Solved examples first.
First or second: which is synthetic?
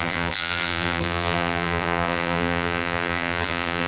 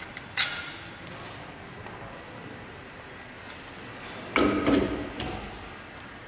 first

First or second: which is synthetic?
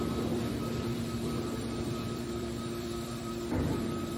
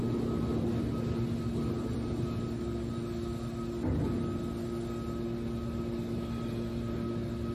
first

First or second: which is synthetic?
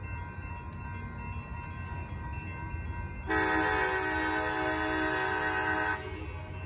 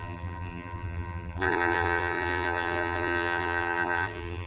second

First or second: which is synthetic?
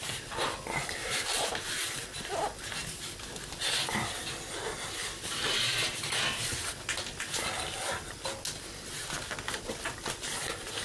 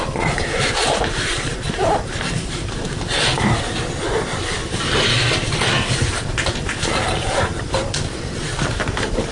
second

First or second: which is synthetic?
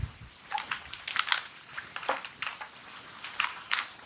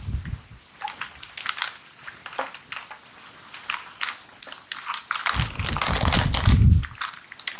first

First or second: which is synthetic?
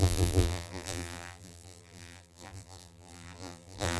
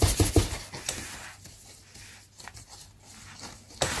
first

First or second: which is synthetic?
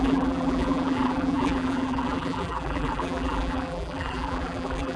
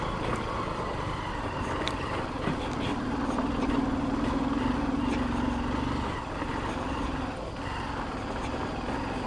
first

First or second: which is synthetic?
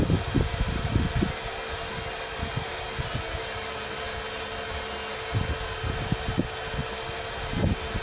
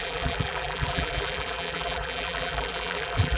second